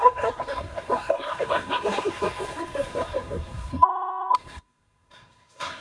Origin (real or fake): fake